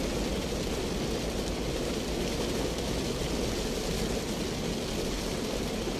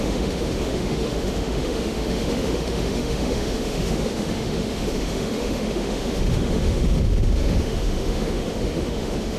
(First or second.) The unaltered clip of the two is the first